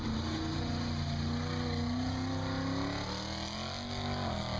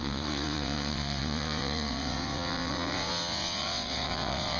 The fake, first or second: second